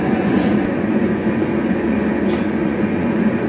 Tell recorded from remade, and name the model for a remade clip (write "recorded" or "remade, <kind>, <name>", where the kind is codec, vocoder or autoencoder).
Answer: remade, vocoder, Vocos